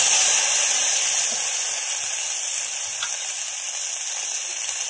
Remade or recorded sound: recorded